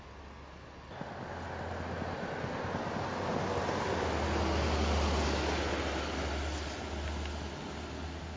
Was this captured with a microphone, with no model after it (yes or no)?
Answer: yes